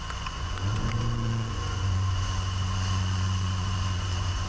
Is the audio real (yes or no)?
no